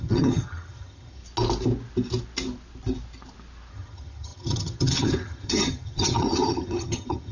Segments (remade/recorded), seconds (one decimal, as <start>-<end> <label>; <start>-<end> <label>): 0.0-1.2 remade; 1.2-3.7 recorded; 3.7-7.3 remade